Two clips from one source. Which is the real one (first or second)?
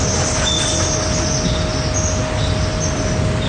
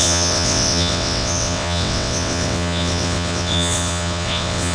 first